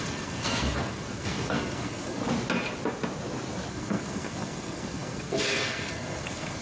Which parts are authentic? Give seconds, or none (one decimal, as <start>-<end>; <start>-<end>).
2.2-3.7